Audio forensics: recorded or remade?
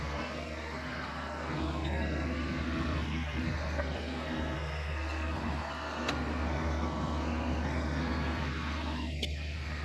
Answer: remade